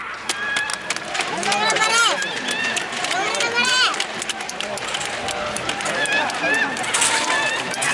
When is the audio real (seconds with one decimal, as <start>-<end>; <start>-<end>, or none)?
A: 0.0-7.9